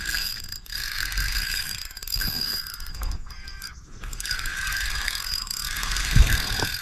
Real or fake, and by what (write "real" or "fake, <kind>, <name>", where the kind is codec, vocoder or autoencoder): fake, codec, SNAC